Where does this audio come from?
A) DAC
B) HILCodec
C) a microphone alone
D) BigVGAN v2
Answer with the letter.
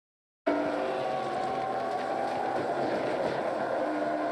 C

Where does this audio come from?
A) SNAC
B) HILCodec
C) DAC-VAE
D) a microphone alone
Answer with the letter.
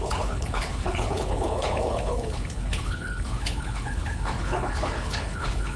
B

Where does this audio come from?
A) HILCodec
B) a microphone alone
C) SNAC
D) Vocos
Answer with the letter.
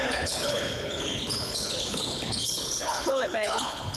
A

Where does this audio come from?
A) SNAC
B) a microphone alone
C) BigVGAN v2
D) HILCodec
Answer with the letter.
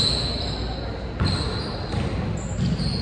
B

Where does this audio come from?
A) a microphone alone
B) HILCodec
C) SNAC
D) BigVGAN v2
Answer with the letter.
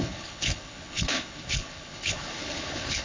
B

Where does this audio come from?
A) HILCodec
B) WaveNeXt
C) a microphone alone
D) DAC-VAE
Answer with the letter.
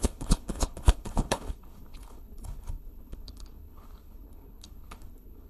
A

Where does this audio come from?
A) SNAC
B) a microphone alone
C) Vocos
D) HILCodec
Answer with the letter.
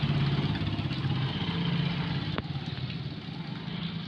B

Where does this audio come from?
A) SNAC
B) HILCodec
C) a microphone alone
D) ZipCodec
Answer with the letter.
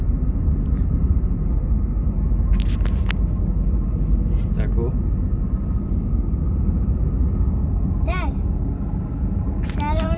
C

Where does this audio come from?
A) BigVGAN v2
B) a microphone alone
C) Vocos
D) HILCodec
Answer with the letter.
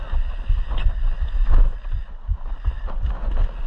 B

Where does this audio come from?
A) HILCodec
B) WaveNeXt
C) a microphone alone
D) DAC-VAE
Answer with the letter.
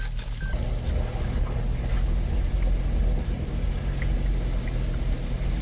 C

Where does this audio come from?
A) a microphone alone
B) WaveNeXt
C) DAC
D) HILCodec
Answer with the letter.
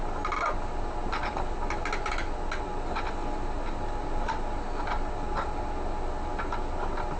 A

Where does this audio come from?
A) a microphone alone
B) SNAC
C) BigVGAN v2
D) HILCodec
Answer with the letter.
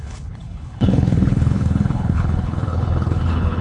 D